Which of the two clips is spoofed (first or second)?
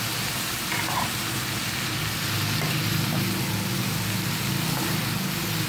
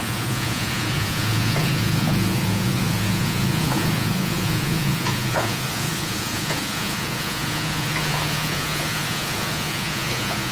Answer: second